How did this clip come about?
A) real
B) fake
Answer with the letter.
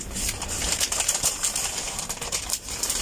B